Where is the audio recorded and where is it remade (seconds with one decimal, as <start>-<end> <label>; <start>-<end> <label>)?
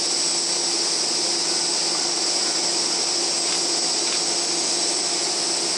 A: 0.0-5.8 recorded